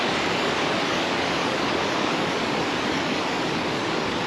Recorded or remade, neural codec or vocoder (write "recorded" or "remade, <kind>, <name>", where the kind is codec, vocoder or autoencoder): remade, codec, DAC